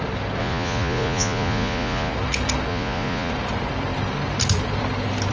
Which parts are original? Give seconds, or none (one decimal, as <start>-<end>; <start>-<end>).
0.0-0.4; 2.1-2.7; 3.3-5.3